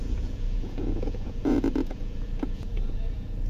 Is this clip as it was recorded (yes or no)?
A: no